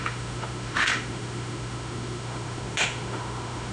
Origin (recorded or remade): remade